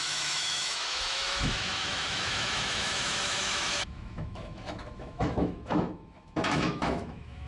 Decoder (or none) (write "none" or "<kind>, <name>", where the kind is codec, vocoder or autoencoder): autoencoder, DAC-VAE